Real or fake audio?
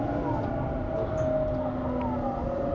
real